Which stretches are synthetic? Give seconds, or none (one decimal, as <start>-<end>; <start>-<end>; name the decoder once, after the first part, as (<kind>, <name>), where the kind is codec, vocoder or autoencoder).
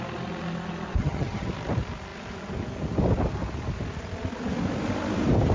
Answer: 1.0-1.5 (vocoder, HiFi-GAN)